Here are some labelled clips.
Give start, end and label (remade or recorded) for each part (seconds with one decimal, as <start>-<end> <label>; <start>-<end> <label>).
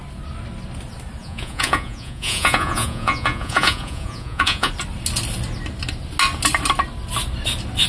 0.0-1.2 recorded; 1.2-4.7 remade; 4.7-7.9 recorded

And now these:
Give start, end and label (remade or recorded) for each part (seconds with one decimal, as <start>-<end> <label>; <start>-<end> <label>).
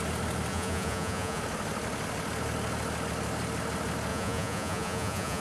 0.0-0.5 recorded; 0.5-1.4 remade; 1.4-4.1 recorded; 4.1-5.4 remade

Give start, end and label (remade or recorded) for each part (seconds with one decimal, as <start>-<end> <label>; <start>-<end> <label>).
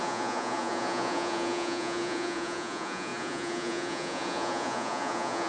0.0-5.5 remade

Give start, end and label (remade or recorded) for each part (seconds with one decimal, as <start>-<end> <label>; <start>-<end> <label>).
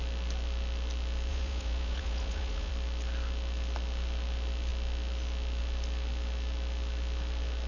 0.0-1.3 recorded; 1.3-2.7 remade; 2.7-7.7 recorded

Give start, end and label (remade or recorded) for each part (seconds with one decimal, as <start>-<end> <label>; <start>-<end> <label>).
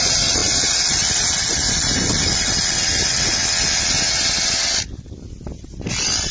0.0-6.3 recorded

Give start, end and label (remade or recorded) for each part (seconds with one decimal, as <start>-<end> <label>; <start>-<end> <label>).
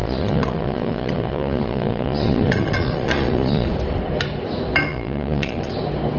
0.0-3.7 remade; 3.7-4.9 recorded; 4.9-5.7 remade; 5.7-6.2 recorded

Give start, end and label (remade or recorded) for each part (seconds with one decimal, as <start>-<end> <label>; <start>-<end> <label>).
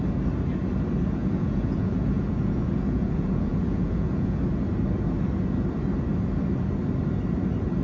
0.0-1.2 recorded; 1.2-4.4 remade; 4.4-7.8 recorded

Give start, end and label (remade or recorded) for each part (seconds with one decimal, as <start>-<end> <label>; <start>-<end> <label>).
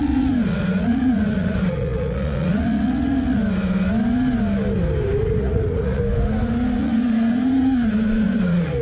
0.0-3.4 remade; 3.4-5.2 recorded; 5.2-6.0 remade; 6.0-6.8 recorded; 6.8-8.8 remade